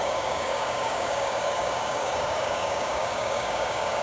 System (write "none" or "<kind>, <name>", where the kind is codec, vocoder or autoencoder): codec, DAC